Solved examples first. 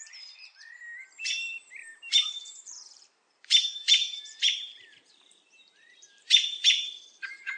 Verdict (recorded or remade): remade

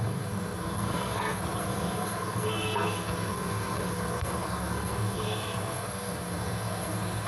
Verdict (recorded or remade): remade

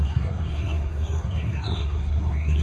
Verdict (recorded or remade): remade